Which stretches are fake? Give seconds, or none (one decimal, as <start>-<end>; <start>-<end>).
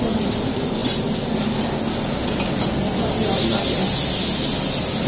none